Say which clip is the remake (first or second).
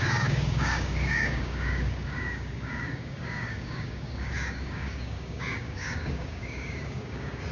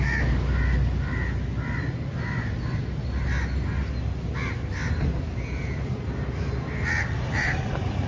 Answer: first